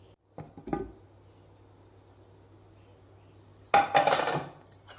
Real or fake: real